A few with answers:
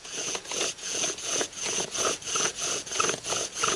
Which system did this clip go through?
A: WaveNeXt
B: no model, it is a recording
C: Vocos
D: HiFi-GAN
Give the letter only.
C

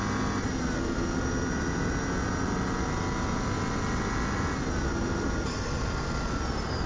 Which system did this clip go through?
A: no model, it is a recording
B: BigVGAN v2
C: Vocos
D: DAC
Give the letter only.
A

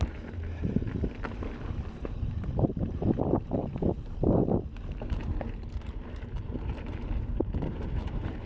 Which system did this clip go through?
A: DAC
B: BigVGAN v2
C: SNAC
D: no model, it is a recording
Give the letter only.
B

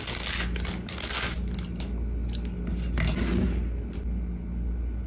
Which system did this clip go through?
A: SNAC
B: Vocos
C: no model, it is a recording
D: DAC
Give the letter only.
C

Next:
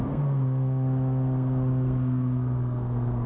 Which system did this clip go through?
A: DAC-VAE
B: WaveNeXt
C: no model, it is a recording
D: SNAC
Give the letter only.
D